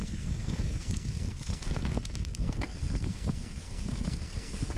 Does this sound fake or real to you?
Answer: fake